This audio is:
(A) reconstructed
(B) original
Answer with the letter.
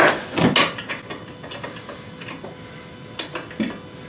B